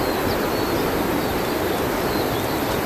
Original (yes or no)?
yes